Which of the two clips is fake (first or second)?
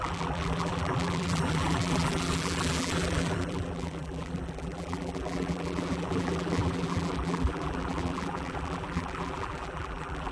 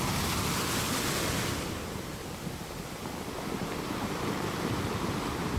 first